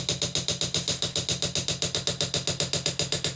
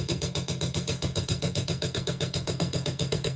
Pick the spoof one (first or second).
second